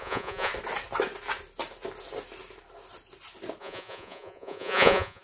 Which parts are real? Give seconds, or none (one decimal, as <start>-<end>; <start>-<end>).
0.5-3.6